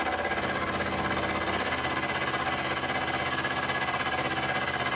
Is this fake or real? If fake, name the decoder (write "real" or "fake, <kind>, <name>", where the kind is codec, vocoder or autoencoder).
real